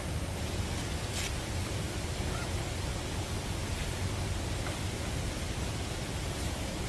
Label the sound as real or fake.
real